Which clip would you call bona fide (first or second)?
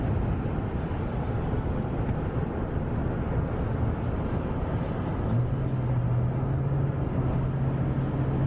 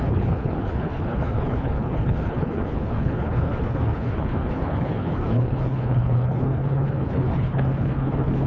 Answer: first